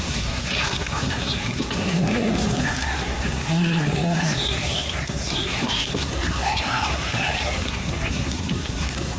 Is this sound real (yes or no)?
no